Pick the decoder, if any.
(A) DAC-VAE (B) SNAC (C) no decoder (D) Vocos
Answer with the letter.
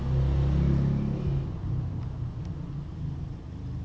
C